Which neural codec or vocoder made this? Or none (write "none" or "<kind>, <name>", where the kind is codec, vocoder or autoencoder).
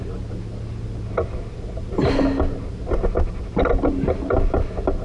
none